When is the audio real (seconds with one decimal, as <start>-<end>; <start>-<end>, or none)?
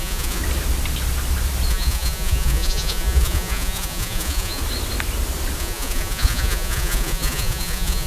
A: 0.4-1.7; 4.6-5.6